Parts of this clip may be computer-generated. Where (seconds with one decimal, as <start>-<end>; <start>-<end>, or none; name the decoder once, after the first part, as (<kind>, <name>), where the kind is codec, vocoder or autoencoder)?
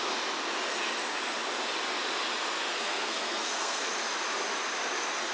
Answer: 2.7-3.9 (codec, SNAC)